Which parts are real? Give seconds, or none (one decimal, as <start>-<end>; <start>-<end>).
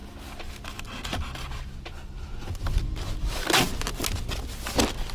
0.0-5.1